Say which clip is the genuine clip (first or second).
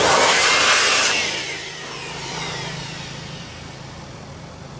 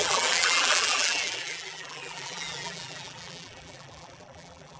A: first